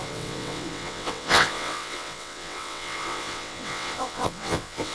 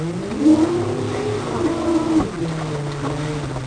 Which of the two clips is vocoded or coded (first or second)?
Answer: first